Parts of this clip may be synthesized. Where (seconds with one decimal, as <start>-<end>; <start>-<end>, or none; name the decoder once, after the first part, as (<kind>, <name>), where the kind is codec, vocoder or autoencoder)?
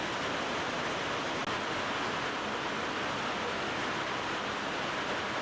none